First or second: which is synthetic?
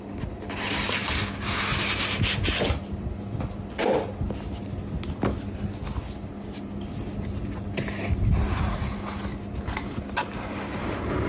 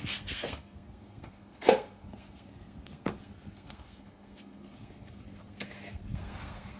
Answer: second